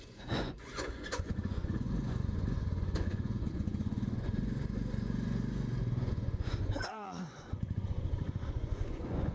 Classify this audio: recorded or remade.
remade